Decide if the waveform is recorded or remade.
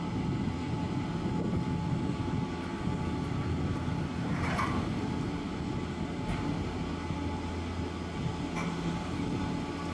recorded